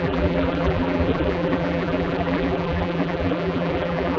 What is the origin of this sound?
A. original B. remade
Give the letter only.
B